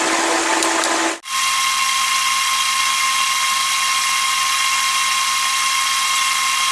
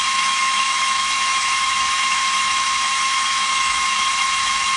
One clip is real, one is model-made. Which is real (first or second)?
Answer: first